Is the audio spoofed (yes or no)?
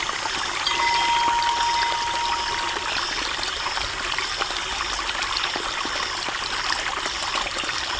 no